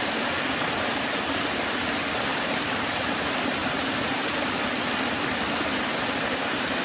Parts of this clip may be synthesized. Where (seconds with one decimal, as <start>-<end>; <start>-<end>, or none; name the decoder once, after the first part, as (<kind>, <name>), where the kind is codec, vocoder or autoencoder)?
2.3-3.2 (vocoder, BigVGAN v2); 3.6-4.5